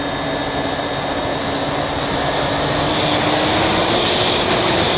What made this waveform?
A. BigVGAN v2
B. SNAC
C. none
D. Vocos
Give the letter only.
C